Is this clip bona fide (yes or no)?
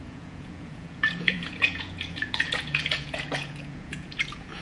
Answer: no